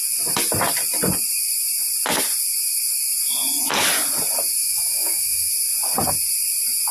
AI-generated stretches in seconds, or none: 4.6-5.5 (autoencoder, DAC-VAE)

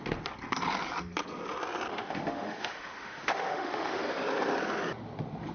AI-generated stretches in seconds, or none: 1.9-4.0 (autoencoder, DAC-VAE)

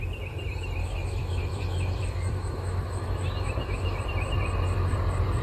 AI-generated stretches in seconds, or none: 0.8-4.0 (autoencoder, DAC-VAE)

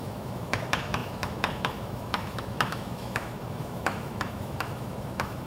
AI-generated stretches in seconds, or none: 0.0-5.5 (autoencoder, DAC-VAE)

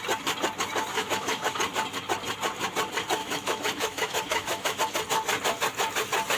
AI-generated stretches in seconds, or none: 0.9-1.6 (autoencoder, DAC-VAE); 3.2-4.8

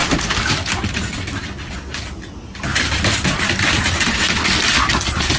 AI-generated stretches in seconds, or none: none

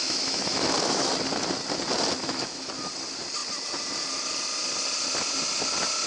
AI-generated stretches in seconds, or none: 0.0-1.1 (autoencoder, DAC-VAE); 2.2-2.7